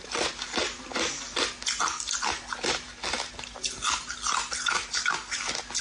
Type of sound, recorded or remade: recorded